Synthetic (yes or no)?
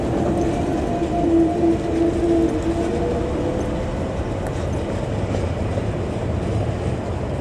no